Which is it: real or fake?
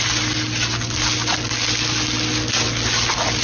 real